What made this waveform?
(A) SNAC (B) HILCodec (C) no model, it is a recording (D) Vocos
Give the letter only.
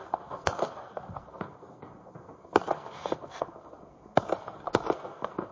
A